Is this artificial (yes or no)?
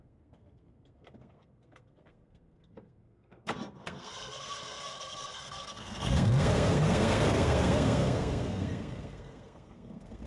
yes